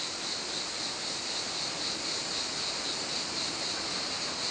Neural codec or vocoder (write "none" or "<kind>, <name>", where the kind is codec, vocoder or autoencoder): none